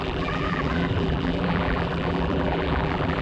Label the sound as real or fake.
fake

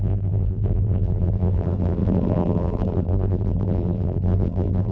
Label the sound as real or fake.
fake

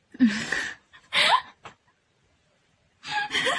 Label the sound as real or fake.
fake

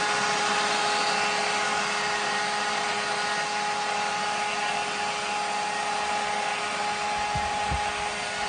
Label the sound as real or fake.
real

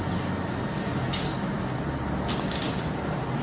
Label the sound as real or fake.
real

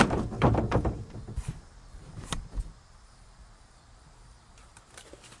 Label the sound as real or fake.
fake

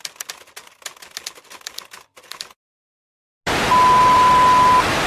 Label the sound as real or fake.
real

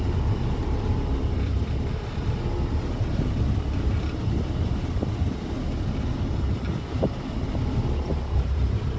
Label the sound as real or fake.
fake